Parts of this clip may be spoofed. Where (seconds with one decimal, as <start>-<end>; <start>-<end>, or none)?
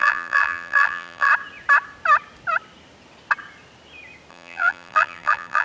0.0-1.3; 4.3-5.6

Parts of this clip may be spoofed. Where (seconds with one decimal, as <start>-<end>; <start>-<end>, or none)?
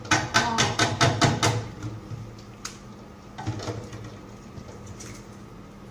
none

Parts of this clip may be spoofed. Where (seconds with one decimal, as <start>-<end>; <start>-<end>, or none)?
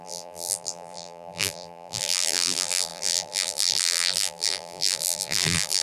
0.0-5.8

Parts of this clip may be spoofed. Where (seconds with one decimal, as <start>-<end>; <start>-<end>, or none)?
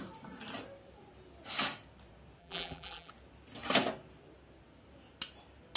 2.4-3.1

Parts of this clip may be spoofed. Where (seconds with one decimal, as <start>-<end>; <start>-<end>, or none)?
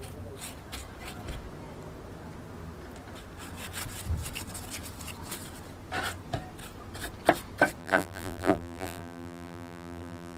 7.8-10.4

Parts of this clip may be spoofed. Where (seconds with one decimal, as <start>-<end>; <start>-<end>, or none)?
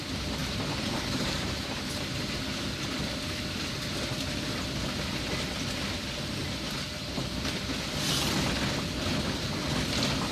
0.4-2.4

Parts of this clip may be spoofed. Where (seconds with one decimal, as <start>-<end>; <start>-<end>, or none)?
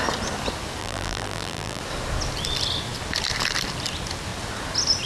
0.8-1.8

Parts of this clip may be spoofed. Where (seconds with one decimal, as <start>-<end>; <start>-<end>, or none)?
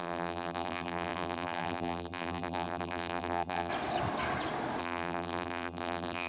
0.0-3.7; 4.8-6.3